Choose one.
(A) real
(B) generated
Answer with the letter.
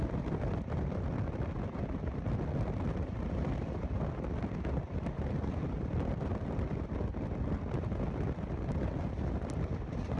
A